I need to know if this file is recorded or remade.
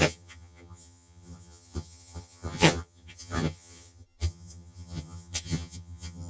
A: remade